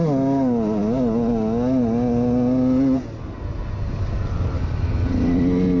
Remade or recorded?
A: recorded